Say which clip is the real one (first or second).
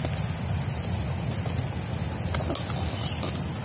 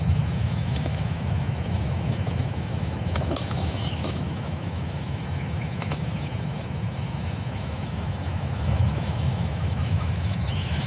first